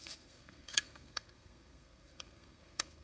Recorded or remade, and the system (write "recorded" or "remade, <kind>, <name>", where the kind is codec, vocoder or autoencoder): remade, codec, SNAC